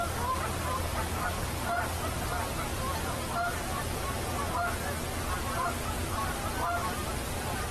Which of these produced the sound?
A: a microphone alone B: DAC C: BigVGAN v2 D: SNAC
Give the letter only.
A